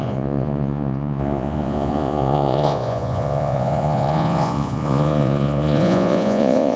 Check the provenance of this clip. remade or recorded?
remade